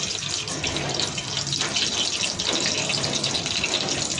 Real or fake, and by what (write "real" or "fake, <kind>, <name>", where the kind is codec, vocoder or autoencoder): real